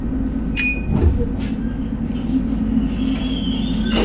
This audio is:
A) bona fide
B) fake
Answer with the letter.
A